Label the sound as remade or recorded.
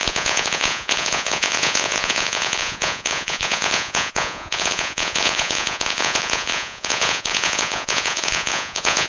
remade